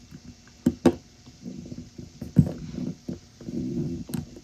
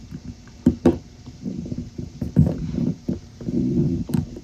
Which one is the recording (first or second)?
first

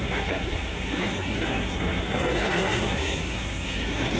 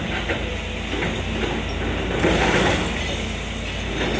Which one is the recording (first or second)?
second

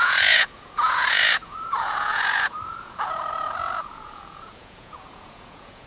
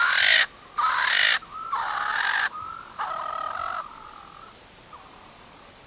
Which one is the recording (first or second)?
second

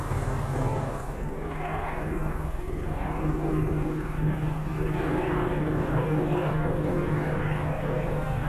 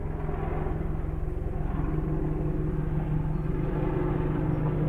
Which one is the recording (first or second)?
second